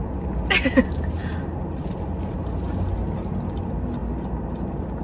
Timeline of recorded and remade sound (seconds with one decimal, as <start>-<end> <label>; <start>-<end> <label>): 0.0-5.0 recorded